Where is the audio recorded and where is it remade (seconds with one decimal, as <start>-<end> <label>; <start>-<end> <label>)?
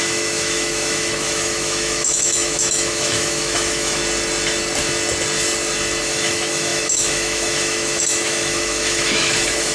0.0-4.0 remade; 4.0-6.0 recorded; 6.0-9.7 remade